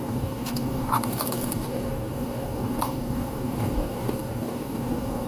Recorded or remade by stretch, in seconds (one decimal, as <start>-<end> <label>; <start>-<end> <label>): 0.0-5.3 remade